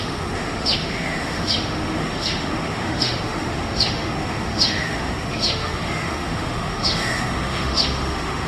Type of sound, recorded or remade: remade